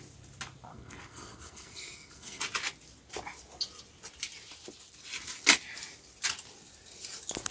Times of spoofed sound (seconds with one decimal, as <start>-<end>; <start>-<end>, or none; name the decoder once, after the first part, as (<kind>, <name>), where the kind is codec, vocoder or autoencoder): 0.7-2.4 (codec, SNAC)